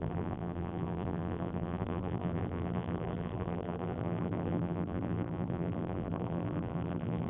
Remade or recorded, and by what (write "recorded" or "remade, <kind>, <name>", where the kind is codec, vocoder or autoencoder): remade, vocoder, BigVGAN v2